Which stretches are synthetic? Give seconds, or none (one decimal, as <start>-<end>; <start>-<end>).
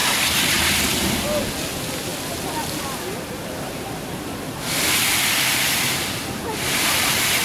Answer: 0.0-1.1